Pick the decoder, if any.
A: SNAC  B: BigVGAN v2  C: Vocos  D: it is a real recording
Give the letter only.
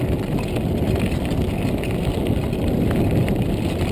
D